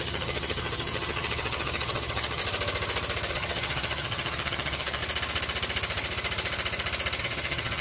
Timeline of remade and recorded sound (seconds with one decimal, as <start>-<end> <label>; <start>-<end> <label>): 0.0-2.4 remade; 2.4-3.3 recorded; 3.3-5.0 remade; 5.0-7.2 recorded; 7.2-7.8 remade